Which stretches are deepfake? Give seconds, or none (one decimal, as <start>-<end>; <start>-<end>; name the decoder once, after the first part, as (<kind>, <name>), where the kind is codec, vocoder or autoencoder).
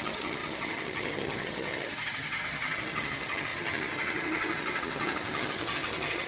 0.0-6.3 (vocoder, HiFi-GAN)